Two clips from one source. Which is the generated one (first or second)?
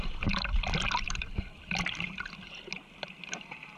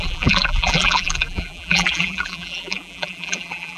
second